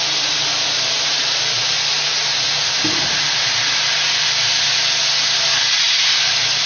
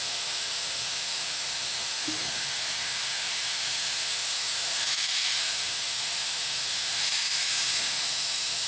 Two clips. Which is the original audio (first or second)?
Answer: first